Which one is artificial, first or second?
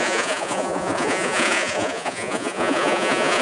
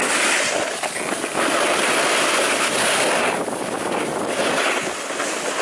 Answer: first